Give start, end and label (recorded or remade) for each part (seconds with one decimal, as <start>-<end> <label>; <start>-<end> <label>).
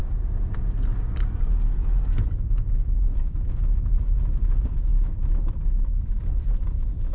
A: 0.0-0.5 recorded; 0.5-0.9 remade; 0.9-1.4 recorded; 1.4-4.9 remade; 4.9-6.2 recorded; 6.2-7.1 remade